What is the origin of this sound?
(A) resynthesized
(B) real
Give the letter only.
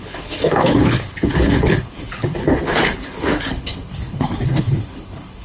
A